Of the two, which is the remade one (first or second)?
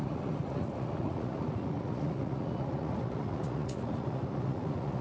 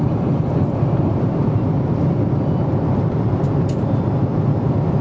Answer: first